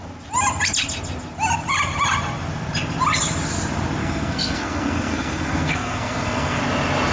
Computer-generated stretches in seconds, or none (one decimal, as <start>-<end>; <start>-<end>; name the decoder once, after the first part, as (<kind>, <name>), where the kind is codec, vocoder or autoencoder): 4.0-6.6 (codec, SNAC)